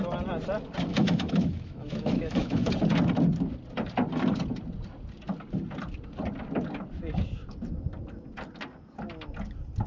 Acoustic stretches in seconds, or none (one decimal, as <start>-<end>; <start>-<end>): 0.0-0.9; 2.7-9.9